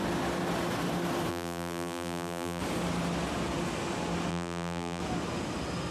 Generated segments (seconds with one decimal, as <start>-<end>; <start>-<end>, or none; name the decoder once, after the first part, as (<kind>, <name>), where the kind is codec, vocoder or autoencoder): 1.3-2.6 (vocoder, BigVGAN v2); 4.3-5.0